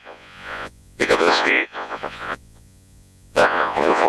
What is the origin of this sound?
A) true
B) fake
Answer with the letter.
B